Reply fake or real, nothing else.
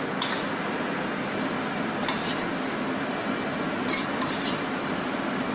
real